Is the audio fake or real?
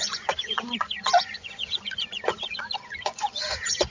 fake